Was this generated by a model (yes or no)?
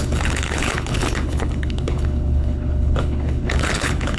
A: yes